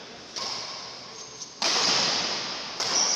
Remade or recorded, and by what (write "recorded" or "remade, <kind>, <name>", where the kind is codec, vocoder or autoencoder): recorded